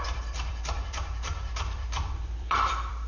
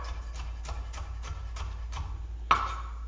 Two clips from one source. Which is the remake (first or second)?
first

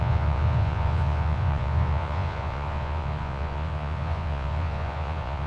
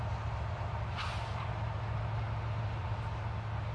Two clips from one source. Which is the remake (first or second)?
first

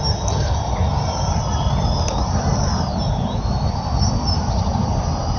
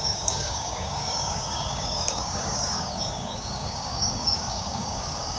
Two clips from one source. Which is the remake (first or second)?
second